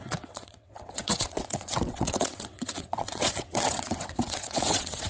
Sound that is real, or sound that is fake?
fake